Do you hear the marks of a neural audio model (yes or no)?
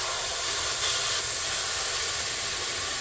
no